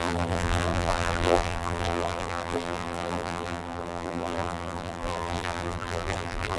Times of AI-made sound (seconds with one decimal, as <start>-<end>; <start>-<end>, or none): 0.0-6.6